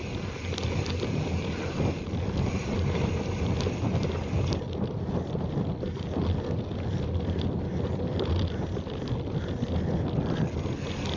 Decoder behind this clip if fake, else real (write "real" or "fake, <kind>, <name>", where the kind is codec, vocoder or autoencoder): real